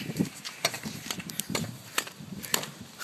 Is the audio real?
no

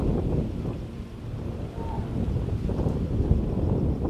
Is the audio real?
yes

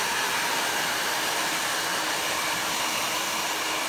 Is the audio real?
no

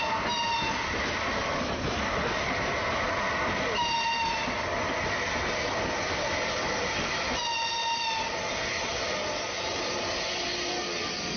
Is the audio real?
yes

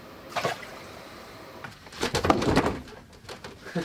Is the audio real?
no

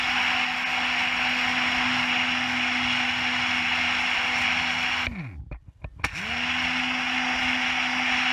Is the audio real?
yes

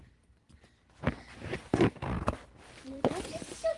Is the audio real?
no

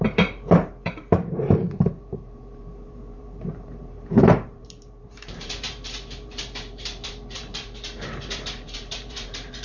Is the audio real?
no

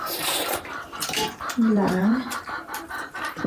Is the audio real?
no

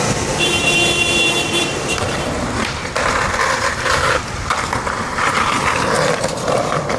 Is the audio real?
no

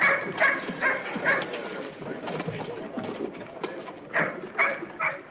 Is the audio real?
no